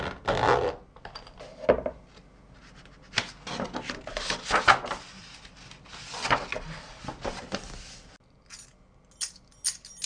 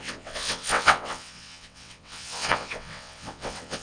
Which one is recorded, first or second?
first